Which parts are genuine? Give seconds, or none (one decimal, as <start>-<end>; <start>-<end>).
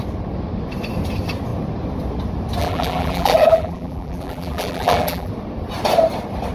0.0-2.6; 5.3-6.5